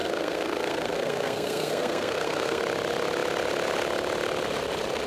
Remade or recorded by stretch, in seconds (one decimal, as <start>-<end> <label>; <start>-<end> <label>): 0.0-2.6 remade; 2.6-5.1 recorded